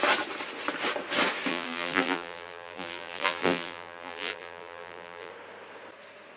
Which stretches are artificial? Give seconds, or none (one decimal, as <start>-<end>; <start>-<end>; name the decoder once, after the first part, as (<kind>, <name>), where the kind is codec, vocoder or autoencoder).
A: 1.5-5.3 (vocoder, BigVGAN v2)